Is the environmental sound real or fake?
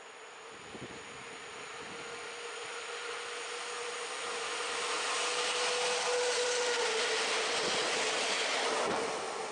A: real